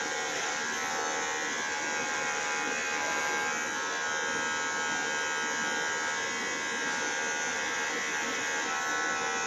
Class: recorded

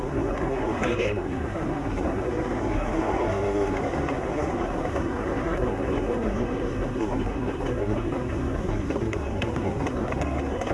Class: remade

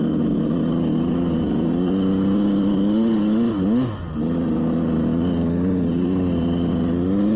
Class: recorded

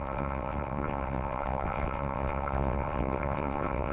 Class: remade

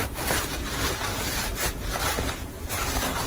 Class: remade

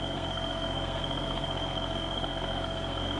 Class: remade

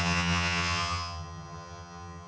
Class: remade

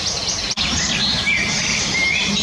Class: remade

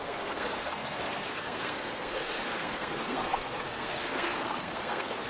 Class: remade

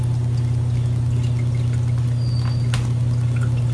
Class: recorded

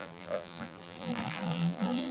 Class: remade